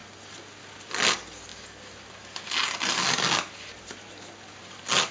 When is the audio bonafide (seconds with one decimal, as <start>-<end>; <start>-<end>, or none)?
0.0-5.1